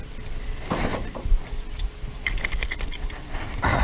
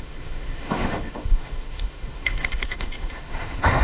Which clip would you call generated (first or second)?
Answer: second